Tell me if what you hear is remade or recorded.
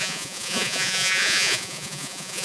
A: remade